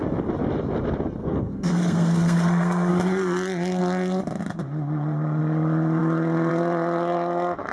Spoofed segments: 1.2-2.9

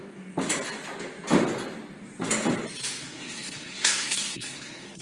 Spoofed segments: 3.0-5.0